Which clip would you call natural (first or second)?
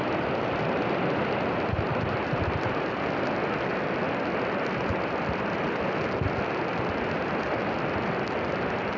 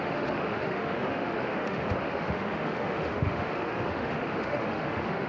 first